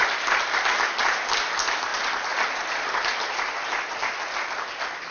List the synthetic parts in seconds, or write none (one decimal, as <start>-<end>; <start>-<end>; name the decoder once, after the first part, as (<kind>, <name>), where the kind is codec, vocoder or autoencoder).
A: none